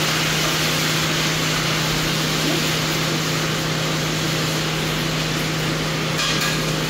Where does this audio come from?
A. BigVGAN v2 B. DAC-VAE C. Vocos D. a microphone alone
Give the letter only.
D